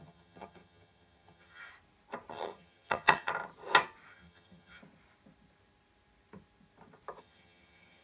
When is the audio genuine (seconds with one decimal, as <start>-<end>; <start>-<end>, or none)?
1.7-2.3; 3.3-4.1; 4.8-7.2